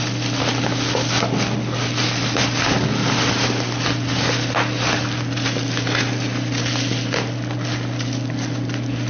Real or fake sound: real